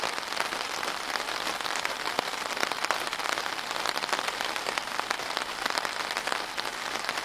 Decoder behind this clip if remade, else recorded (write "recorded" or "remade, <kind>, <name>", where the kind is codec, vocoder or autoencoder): recorded